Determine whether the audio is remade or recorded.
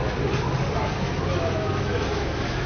recorded